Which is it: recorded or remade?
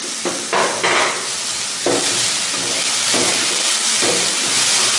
recorded